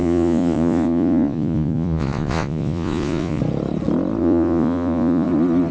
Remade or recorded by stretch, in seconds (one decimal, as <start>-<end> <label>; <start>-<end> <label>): 0.0-3.4 remade; 3.4-4.2 recorded; 4.2-5.3 remade; 5.3-5.7 recorded